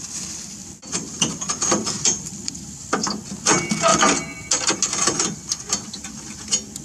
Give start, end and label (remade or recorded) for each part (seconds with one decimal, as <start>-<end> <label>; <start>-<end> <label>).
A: 0.0-0.6 recorded; 0.6-2.5 remade; 2.5-6.8 recorded